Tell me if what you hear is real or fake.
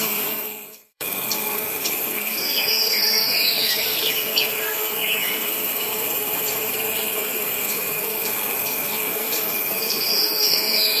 fake